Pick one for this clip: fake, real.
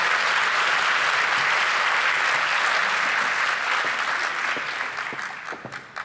real